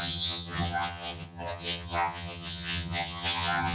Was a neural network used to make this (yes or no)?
yes